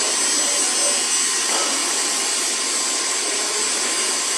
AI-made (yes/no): no